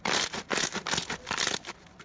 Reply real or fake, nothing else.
real